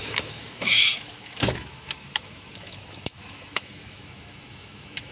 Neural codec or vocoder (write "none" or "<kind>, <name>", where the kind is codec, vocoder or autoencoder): autoencoder, DAC-VAE